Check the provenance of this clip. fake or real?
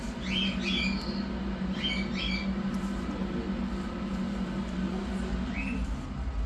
real